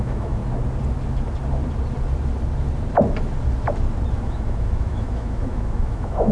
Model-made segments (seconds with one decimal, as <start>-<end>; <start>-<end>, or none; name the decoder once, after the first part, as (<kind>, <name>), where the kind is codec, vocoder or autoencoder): 0.0-0.4 (autoencoder, DAC-VAE); 4.2-6.3